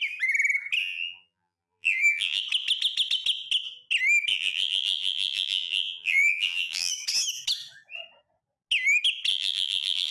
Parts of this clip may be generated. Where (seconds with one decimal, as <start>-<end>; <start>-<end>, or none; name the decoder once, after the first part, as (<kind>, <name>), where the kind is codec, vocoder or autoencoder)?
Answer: 0.8-2.4 (vocoder, BigVGAN v2); 4.3-6.9; 9.3-10.1